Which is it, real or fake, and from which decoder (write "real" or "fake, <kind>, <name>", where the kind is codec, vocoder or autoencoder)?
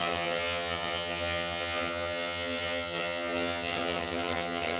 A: fake, vocoder, HiFi-GAN